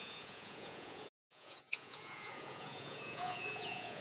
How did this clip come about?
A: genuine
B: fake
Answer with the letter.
B